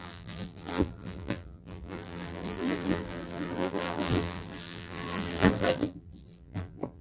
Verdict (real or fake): fake